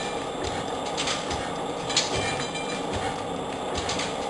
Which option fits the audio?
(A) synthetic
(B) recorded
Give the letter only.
B